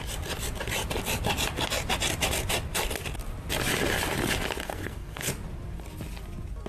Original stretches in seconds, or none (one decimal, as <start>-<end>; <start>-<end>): 0.0-4.6; 5.3-6.7